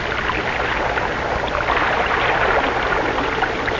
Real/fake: real